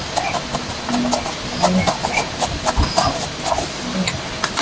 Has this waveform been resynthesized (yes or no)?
no